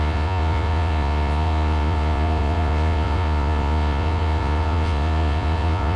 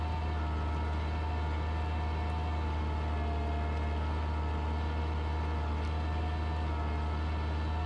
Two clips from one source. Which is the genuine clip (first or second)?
second